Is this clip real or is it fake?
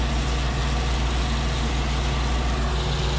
real